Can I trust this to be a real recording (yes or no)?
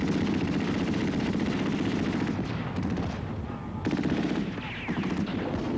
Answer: yes